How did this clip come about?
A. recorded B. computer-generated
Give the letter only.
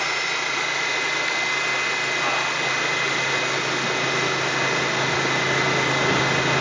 A